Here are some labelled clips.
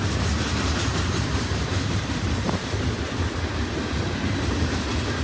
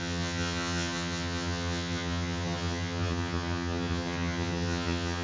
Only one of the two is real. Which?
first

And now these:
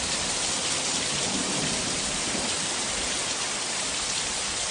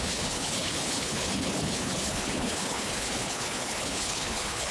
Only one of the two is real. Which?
first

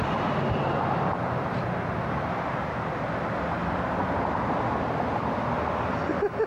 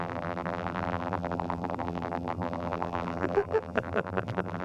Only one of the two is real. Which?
first